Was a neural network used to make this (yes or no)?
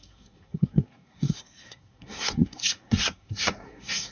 yes